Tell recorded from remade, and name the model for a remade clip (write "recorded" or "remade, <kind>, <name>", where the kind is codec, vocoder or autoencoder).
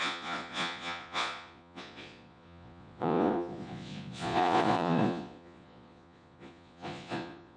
remade, vocoder, Vocos